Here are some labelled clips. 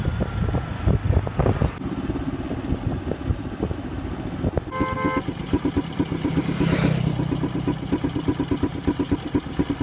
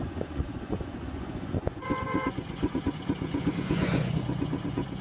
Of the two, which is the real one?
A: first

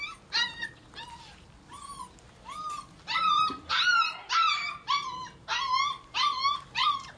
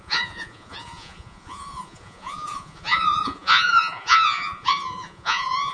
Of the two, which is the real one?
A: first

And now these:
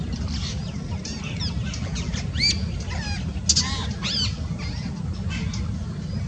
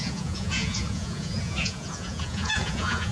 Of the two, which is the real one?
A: first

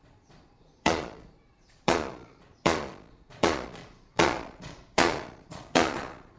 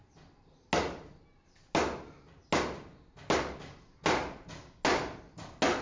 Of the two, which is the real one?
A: second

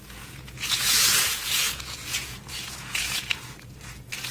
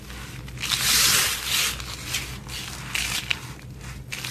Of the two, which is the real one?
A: second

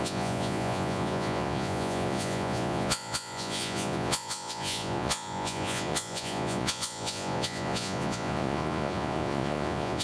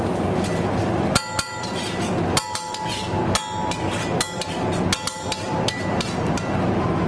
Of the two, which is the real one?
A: second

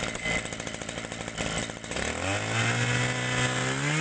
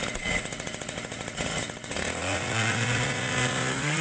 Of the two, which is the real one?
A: first